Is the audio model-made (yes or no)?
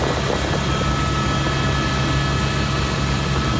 no